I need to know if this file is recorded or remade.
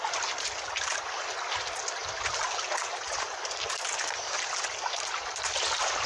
recorded